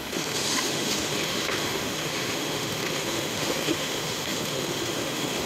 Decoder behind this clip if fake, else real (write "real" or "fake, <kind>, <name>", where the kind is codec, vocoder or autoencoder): fake, autoencoder, DAC-VAE